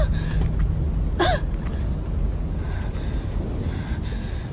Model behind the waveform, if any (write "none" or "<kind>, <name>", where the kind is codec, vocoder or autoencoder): none